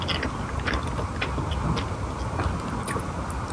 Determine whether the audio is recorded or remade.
recorded